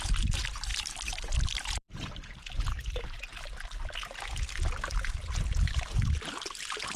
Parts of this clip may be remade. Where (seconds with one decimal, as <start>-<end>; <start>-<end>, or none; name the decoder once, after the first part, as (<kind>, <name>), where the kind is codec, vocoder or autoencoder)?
0.7-2.1 (vocoder, BigVGAN v2)